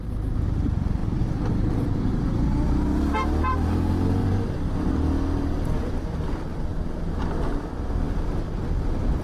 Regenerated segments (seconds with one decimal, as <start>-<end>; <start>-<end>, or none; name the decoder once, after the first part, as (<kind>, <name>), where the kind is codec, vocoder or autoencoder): 1.0-2.4 (vocoder, BigVGAN v2); 4.2-4.9